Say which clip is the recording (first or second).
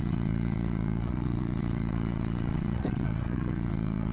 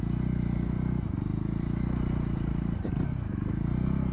second